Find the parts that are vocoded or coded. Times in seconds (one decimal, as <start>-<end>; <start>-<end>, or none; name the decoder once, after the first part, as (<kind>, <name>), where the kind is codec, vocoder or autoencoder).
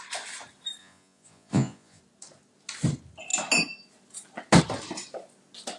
0.8-2.0 (vocoder, Vocos)